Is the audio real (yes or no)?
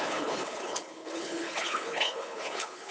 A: no